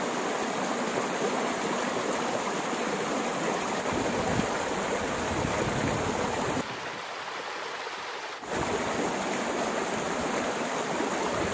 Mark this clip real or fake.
real